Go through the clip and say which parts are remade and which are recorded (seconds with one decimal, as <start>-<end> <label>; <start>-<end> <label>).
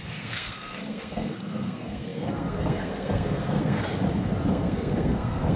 0.0-3.8 remade; 3.8-4.5 recorded; 4.5-5.6 remade